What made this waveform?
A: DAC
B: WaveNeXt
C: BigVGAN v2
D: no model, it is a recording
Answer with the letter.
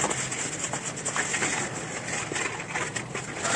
D